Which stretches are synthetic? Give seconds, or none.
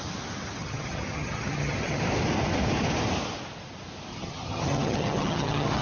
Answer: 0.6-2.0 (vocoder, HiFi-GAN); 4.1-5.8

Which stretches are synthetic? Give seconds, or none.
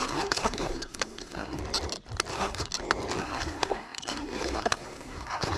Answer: 0.0-1.6 (codec, SNAC); 2.3-2.7; 3.2-5.6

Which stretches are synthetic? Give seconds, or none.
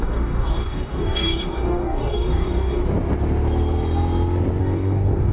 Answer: 0.0-2.8 (codec, DAC); 4.6-5.3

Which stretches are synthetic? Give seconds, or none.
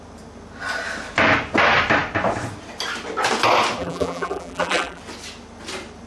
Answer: 3.8-5.0 (vocoder, BigVGAN v2)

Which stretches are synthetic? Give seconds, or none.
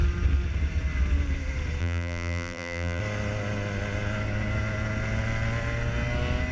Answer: 1.8-3.0 (vocoder, BigVGAN v2)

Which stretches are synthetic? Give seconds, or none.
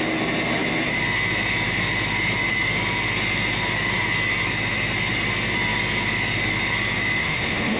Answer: 7.2-7.8 (autoencoder, DAC-VAE)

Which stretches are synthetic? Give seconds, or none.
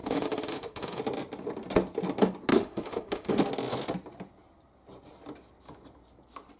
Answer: 0.0-1.0 (autoencoder, DAC-VAE); 2.5-3.5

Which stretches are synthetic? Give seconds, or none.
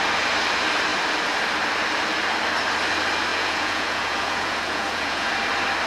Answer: 3.3-5.3 (vocoder, Vocos)